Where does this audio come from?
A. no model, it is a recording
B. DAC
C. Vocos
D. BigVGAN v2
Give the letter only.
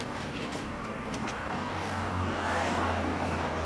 B